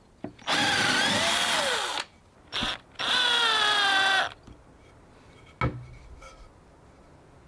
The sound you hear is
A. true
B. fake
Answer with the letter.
A